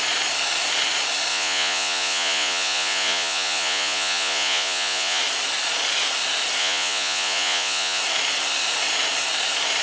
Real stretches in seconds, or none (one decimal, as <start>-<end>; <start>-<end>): 0.0-1.3; 5.2-6.6; 8.0-9.8